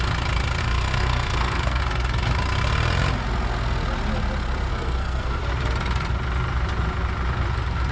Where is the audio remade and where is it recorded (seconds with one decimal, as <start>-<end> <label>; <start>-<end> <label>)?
0.0-0.6 recorded; 0.6-1.8 remade; 1.8-4.7 recorded; 4.7-5.4 remade; 5.4-7.9 recorded